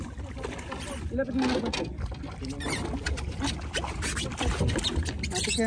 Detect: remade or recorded recorded